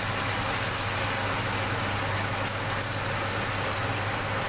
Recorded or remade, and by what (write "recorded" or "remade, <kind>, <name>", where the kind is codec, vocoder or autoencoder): recorded